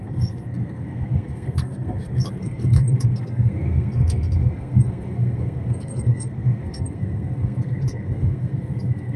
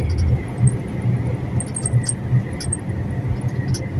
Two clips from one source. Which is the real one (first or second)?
second